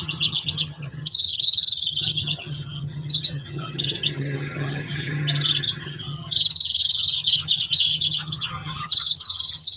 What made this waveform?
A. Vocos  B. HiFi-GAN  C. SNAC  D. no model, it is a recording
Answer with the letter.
B